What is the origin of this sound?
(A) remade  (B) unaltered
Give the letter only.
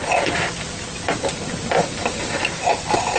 B